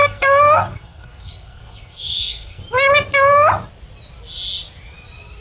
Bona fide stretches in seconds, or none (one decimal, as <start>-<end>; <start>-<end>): 2.6-5.4